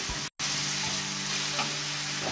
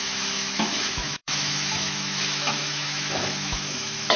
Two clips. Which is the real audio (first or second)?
first